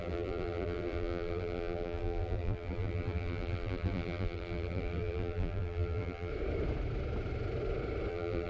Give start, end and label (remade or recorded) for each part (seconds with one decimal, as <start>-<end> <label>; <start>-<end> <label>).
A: 0.0-6.3 remade; 6.3-8.1 recorded; 8.1-8.5 remade